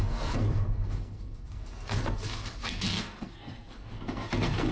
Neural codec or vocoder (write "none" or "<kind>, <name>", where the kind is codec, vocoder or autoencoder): codec, SNAC